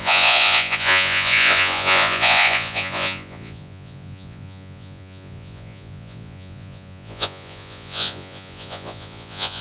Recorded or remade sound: remade